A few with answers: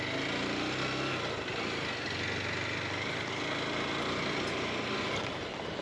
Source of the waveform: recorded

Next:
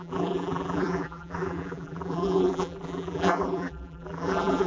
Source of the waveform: remade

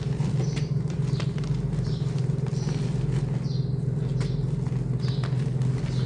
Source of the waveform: recorded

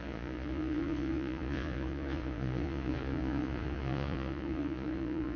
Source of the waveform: remade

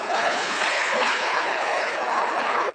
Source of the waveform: remade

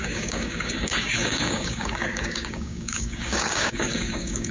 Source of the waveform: remade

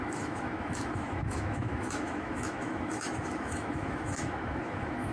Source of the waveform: remade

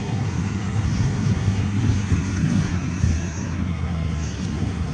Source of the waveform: remade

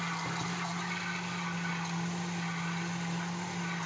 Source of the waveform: recorded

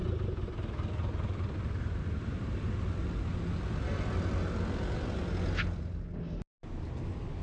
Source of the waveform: recorded